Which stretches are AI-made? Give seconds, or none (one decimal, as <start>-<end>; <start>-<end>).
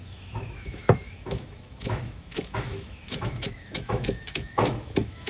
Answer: 0.0-5.3